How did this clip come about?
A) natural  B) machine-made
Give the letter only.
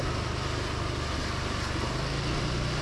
A